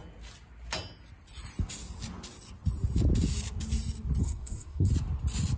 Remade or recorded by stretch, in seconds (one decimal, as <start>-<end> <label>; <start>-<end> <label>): 0.0-4.2 recorded; 4.2-4.9 remade; 4.9-5.6 recorded